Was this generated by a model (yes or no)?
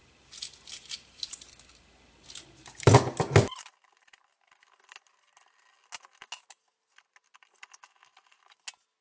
no